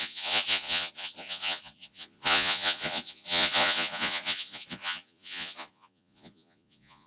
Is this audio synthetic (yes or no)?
yes